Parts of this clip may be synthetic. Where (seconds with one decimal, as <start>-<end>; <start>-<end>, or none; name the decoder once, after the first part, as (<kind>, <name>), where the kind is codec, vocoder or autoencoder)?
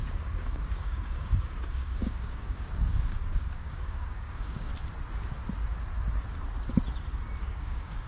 0.0-4.7 (codec, DAC); 7.4-8.1